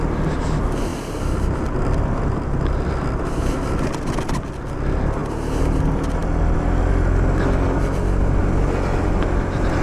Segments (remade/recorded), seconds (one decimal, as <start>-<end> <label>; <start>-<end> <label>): 0.0-9.8 recorded